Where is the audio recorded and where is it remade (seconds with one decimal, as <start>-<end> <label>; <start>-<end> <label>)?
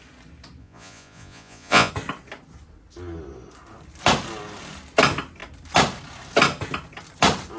0.0-0.6 recorded; 0.6-1.9 remade; 1.9-7.6 recorded